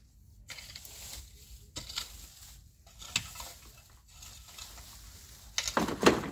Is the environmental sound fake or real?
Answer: real